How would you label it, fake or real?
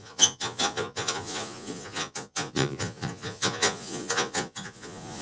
fake